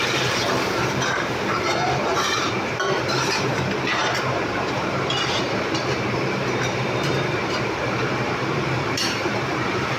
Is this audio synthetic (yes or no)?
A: yes